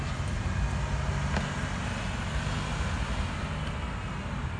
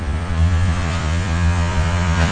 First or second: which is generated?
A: second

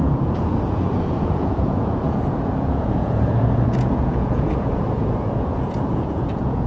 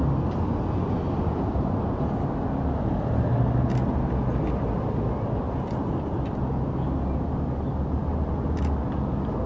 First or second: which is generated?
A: first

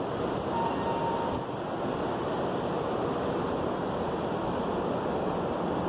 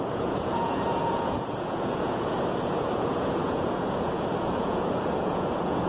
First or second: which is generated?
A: second